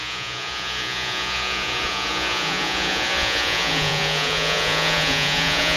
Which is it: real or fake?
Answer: fake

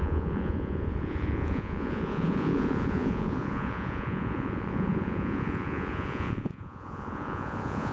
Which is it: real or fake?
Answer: fake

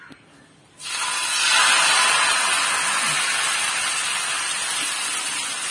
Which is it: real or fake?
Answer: real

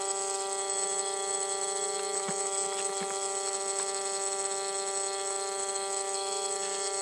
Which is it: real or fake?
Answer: real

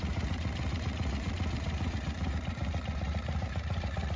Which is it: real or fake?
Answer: fake